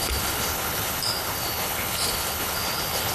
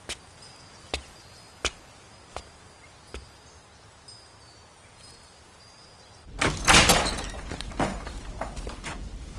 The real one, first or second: second